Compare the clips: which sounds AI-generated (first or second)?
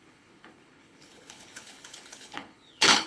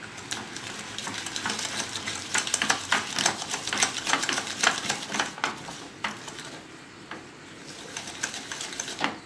first